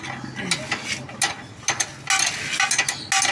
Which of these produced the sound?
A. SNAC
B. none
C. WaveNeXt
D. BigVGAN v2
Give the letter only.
B